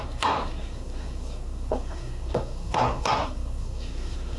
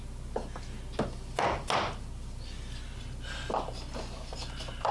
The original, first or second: second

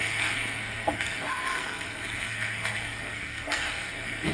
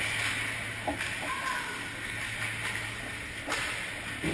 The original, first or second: second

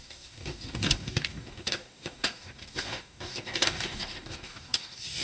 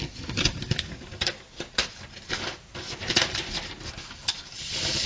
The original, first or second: second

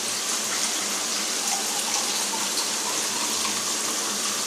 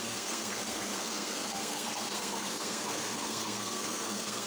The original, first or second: first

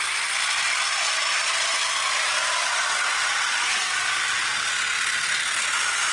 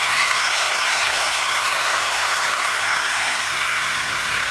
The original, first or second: first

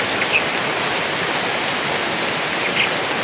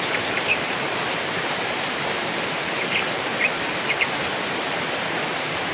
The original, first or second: first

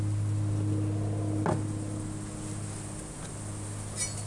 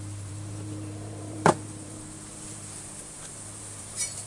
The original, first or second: first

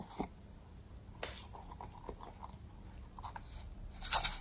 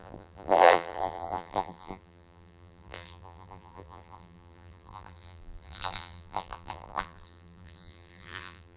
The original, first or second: first